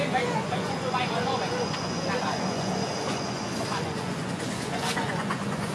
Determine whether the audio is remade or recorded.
remade